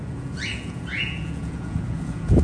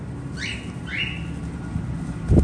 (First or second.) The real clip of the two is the second